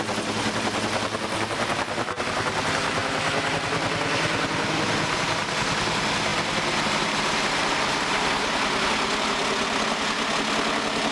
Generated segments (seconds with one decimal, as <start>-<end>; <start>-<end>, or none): none